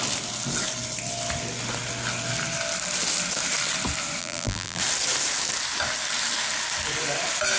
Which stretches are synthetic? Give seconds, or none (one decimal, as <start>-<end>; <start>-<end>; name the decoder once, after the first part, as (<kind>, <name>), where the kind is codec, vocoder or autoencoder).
4.2-4.8 (vocoder, BigVGAN v2)